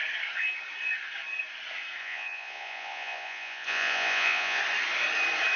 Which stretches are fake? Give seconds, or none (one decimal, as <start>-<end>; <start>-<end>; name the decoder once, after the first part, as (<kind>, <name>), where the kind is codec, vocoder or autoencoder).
2.0-4.6 (vocoder, Vocos)